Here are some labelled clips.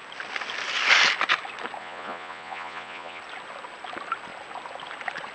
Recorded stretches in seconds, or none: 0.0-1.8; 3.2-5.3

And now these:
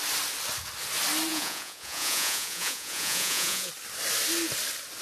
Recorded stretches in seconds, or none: 0.0-1.3; 3.7-5.0

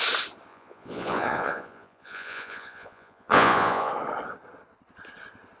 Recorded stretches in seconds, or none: 0.0-0.5; 3.9-5.6

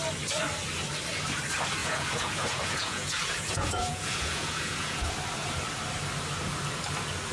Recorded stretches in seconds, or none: 0.0-1.8; 5.1-7.3

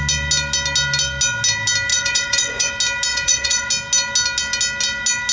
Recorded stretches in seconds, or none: 0.0-1.9; 2.7-3.1; 3.7-5.3

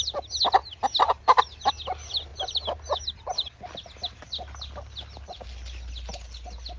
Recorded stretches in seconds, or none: 0.0-6.8

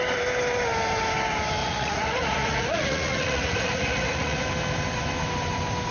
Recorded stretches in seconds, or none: 0.0-1.6; 4.4-5.9

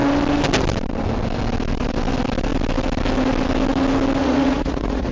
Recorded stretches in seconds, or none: 0.0-4.2